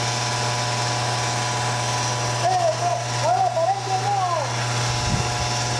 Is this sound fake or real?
real